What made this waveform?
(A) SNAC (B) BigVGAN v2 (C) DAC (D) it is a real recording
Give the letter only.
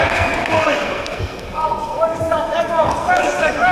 A